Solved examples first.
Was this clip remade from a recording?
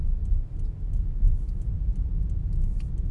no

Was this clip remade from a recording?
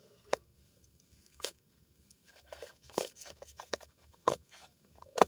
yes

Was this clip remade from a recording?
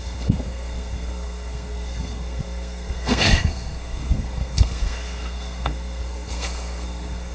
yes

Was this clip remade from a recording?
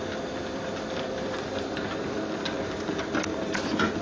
no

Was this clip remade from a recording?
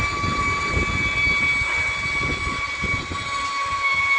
no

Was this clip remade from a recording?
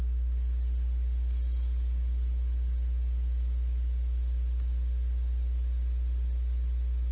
no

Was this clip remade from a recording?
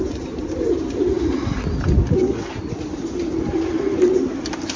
no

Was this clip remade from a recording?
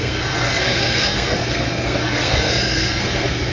yes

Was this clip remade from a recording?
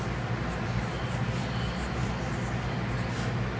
no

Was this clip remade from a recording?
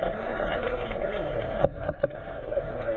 yes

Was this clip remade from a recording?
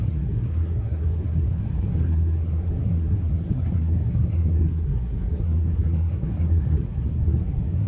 yes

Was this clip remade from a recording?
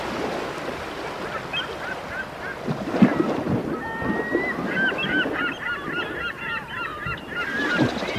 no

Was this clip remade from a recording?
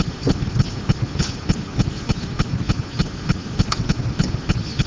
no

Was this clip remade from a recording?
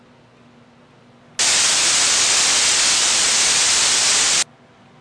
no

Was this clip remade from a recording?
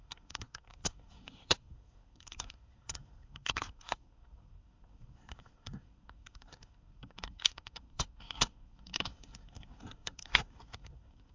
yes